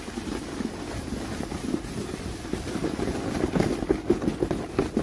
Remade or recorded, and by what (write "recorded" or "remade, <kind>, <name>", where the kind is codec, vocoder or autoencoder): recorded